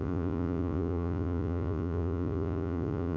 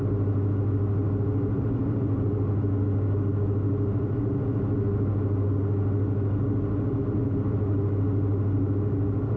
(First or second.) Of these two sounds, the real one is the second